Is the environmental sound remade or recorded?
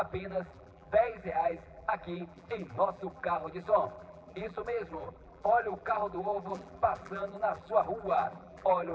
remade